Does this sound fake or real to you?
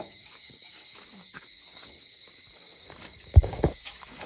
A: fake